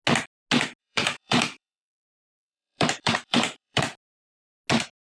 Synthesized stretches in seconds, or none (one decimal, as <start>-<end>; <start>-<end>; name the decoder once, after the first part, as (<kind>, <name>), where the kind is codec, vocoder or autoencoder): 0.8-3.8 (vocoder, BigVGAN v2)